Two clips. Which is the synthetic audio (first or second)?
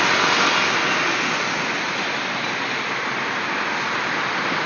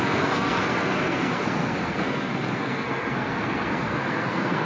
second